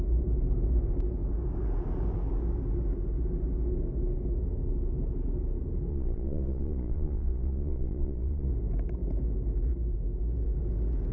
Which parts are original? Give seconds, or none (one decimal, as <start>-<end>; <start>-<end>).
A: 0.0-5.9; 8.5-11.1